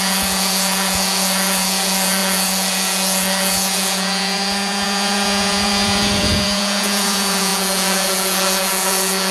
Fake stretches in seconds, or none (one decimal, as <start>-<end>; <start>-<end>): 0.0-9.3